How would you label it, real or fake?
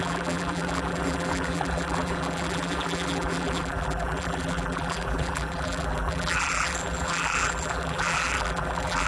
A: fake